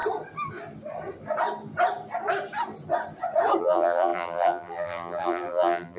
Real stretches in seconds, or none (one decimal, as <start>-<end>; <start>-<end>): 0.0-3.6